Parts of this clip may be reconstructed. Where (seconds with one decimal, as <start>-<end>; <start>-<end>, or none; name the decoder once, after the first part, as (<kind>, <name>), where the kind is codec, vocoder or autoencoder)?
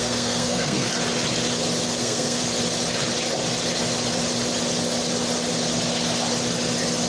0.0-0.9 (codec, SNAC); 2.0-2.4